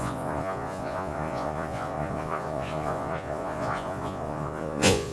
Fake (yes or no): yes